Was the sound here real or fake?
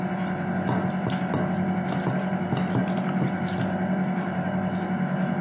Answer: real